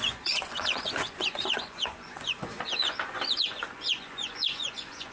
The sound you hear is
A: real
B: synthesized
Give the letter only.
B